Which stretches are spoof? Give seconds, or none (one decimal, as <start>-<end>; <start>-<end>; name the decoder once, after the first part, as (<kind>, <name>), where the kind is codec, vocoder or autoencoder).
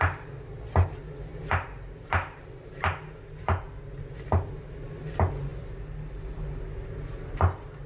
none